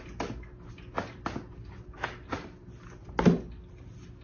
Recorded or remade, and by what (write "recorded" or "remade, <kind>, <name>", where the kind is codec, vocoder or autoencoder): recorded